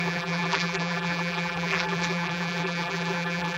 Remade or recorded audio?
remade